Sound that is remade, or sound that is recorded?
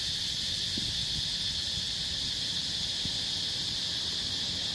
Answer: recorded